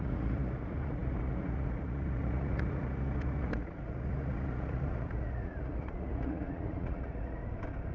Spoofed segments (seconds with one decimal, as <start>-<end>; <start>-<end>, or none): 0.0-7.4